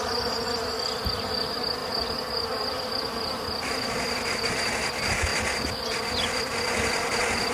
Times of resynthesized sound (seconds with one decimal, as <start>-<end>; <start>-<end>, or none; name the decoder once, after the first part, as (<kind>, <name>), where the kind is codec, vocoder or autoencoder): none